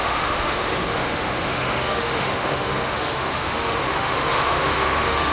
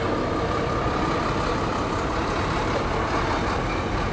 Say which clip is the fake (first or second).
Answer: first